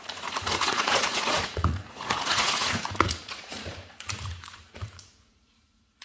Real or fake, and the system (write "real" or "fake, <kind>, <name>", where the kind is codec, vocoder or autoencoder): fake, vocoder, Vocos